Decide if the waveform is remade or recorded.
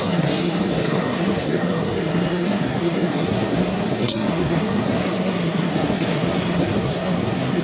remade